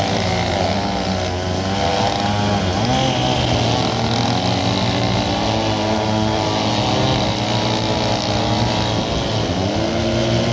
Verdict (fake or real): real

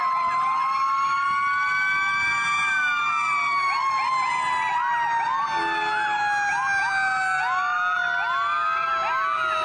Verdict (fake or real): real